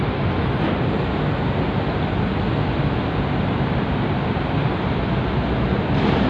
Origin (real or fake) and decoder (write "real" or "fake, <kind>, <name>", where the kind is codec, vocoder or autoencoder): real